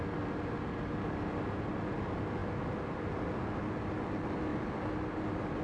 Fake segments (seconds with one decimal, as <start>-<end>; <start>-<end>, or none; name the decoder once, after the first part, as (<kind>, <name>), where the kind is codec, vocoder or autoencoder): none